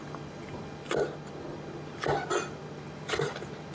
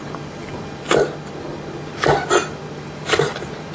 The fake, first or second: second